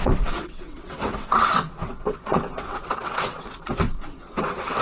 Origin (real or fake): fake